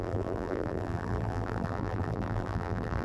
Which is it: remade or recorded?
remade